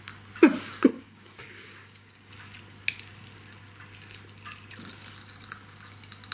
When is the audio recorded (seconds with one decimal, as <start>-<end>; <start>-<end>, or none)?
0.0-0.9; 2.3-6.3